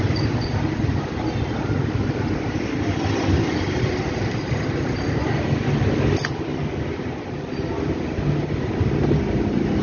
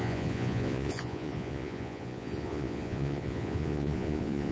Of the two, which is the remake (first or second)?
second